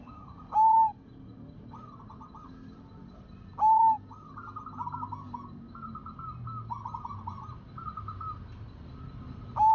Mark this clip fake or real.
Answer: real